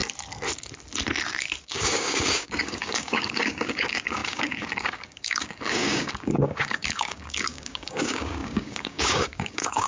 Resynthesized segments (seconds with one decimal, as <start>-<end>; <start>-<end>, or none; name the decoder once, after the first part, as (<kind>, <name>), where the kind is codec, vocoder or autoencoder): 1.6-9.9 (codec, DAC)